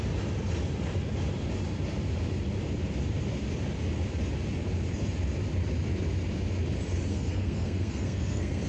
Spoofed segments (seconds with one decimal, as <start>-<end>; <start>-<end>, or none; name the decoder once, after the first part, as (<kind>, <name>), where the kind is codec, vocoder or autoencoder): 7.1-8.7 (codec, SNAC)